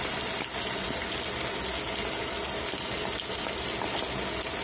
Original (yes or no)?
yes